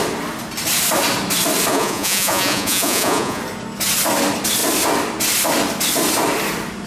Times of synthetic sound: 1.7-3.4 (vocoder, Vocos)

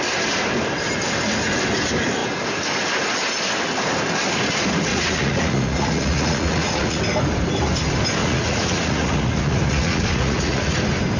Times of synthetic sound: 4.9-7.0 (vocoder, Vocos); 8.2-10.7